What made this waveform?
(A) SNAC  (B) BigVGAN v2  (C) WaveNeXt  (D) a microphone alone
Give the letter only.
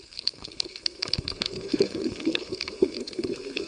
A